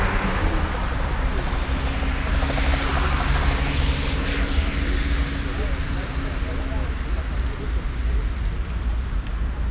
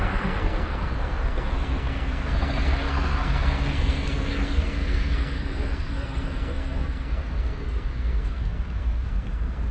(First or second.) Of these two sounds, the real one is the first